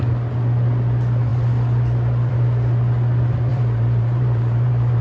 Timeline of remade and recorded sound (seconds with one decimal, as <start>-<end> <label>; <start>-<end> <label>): 0.0-3.5 recorded; 3.5-5.0 remade